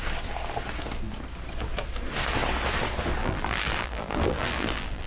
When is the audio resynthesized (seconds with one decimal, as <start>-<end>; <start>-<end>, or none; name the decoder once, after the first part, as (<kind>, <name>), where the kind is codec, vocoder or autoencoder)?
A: 3.2-5.1 (vocoder, BigVGAN v2)